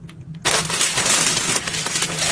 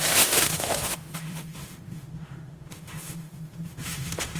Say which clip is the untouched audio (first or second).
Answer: first